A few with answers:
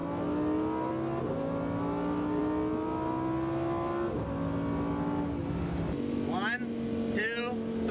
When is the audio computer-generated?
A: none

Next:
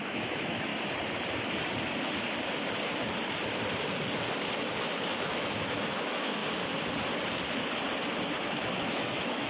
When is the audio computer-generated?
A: 0.0-0.7 (autoencoder, DAC-VAE); 4.8-6.4; 8.4-9.5

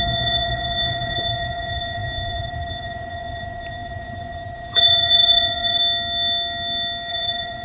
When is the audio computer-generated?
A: 0.0-5.8 (vocoder, Vocos); 7.1-7.6